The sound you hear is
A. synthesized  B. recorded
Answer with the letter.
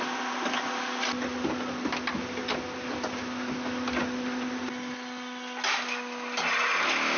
B